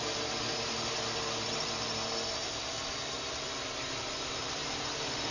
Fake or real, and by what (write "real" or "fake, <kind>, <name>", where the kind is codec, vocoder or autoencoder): real